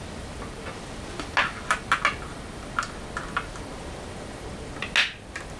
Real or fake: real